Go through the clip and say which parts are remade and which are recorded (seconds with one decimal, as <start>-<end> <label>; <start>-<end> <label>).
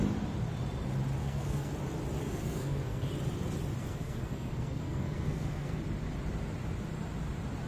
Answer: 0.0-1.2 recorded; 1.2-1.7 remade; 1.7-2.2 recorded; 2.2-3.1 remade; 3.1-3.8 recorded; 3.8-5.8 remade; 5.8-7.7 recorded